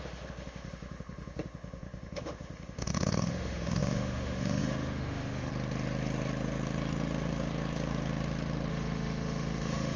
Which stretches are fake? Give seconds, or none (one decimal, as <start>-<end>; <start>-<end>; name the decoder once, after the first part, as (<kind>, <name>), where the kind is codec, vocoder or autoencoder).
0.0-5.5 (autoencoder, DAC-VAE); 8.7-10.0